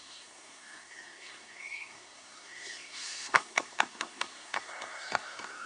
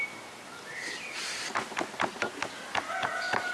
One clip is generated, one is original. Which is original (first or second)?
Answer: second